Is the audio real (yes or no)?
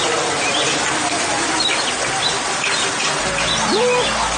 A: yes